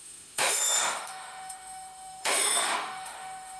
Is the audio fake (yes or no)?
yes